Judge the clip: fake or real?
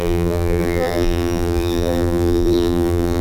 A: fake